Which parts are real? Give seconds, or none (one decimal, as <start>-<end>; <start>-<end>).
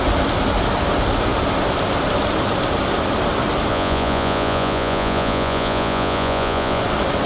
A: 0.0-3.7; 6.8-7.3